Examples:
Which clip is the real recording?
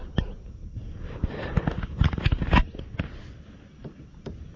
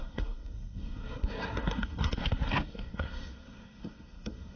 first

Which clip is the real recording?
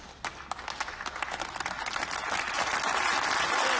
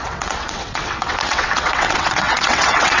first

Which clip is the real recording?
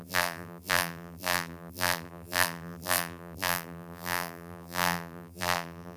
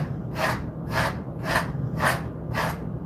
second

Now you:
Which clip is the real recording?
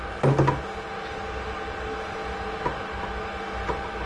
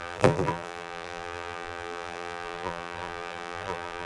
first